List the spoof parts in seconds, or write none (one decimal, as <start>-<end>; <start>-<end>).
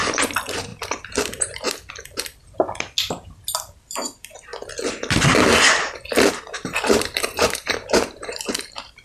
0.0-0.7; 3.8-4.5; 6.3-9.0